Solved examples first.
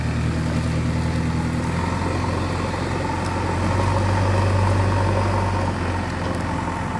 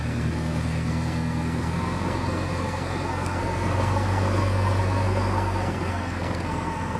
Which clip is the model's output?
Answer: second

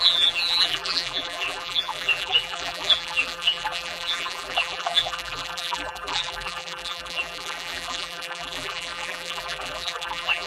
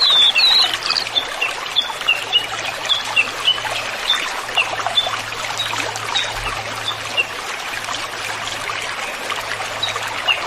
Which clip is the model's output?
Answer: first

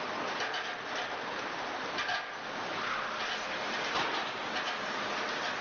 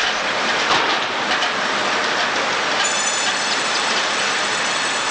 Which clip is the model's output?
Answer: second